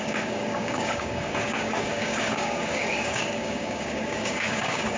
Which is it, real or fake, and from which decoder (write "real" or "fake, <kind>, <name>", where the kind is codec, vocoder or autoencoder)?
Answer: fake, codec, DAC